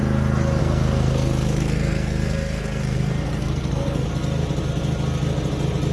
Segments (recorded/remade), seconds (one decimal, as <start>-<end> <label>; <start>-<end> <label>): 0.0-0.6 recorded; 0.6-4.1 remade; 4.1-5.9 recorded